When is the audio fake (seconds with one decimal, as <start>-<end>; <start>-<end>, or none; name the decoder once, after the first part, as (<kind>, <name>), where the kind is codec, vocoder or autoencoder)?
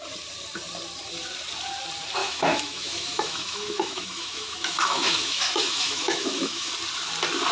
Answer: 2.2-6.7 (autoencoder, DAC-VAE)